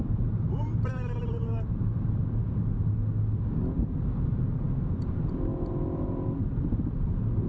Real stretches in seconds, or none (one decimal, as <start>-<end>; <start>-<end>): 3.0-3.8